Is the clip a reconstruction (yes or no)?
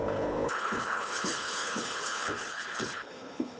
yes